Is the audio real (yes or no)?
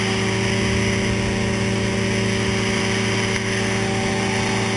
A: yes